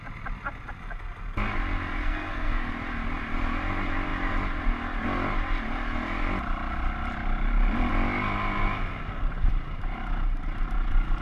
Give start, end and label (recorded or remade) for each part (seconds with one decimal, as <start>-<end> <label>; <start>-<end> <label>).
0.0-2.0 recorded; 2.0-2.7 remade; 2.7-11.2 recorded